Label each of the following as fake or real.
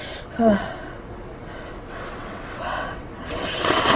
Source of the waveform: fake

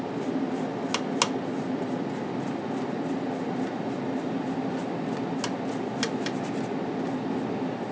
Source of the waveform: real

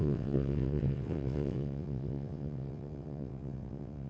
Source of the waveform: fake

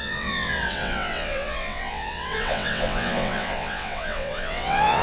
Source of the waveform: fake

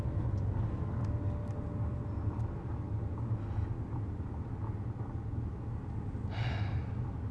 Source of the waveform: real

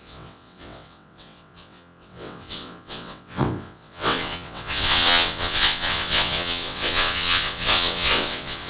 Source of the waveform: fake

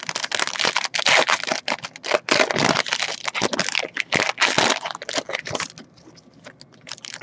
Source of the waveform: real